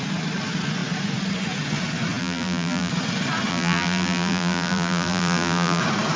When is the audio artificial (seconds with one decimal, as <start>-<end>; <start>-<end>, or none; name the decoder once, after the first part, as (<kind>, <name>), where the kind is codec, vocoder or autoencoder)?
2.2-2.9 (vocoder, BigVGAN v2); 3.5-5.8